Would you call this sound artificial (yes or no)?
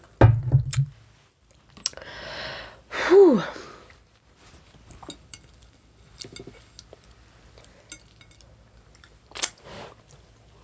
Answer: no